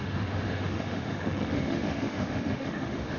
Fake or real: fake